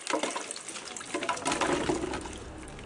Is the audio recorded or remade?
recorded